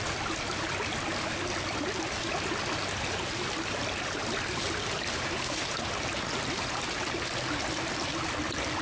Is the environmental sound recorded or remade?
recorded